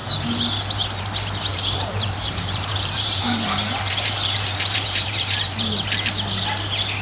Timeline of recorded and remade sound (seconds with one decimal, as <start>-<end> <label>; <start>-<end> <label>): 0.0-1.5 recorded; 1.5-5.7 remade; 5.7-7.0 recorded